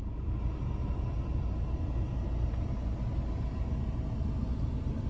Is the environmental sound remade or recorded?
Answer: recorded